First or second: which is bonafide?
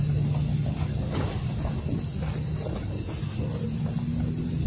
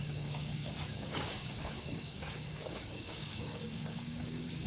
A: first